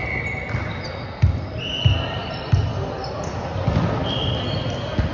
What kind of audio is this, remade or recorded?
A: recorded